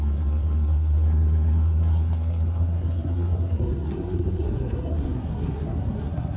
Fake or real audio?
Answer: fake